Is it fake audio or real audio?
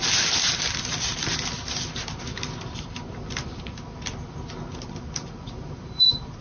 fake